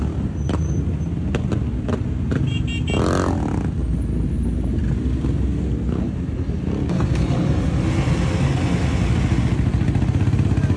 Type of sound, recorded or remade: recorded